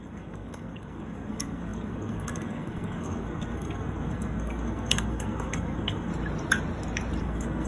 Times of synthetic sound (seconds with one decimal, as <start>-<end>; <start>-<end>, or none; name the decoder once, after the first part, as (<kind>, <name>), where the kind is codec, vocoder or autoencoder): 0.0-6.1 (codec, SNAC); 7.2-7.7